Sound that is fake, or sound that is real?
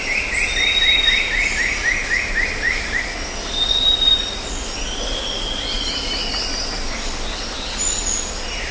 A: real